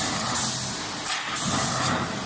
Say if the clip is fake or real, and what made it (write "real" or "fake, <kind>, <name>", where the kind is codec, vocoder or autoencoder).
real